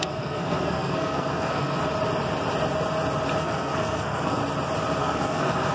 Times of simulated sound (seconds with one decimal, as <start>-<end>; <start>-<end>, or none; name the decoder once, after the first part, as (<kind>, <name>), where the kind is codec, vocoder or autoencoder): 0.0-1.8 (codec, SNAC); 3.4-4.4; 5.0-5.7